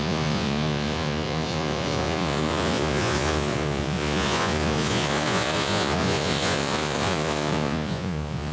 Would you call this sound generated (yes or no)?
yes